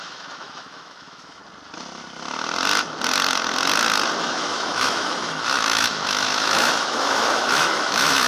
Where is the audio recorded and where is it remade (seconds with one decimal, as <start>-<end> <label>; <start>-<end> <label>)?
0.0-1.4 remade; 1.4-4.2 recorded; 4.2-8.3 remade